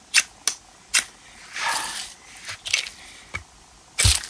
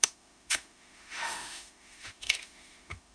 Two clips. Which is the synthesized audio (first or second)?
second